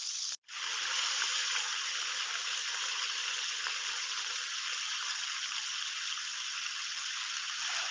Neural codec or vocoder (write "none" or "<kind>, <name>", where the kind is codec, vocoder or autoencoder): none